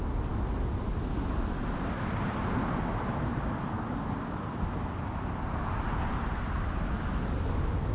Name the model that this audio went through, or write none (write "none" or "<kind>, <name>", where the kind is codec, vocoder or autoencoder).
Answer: none